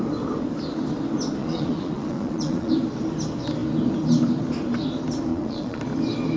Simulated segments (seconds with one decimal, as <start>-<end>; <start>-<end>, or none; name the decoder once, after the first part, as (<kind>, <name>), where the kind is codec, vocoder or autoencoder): 1.4-2.7 (vocoder, Vocos); 5.3-5.8